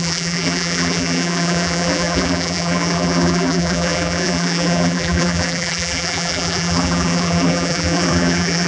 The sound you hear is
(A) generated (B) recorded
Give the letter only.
A